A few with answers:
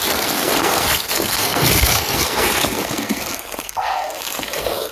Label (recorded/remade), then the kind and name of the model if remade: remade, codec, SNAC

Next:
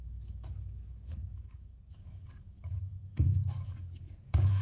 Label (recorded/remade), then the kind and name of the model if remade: remade, codec, DAC